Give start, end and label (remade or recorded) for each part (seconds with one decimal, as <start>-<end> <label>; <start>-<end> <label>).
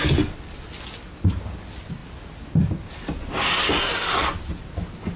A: 0.0-5.2 recorded